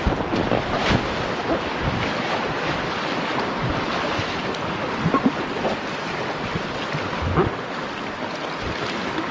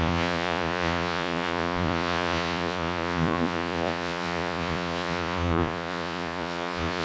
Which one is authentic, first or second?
first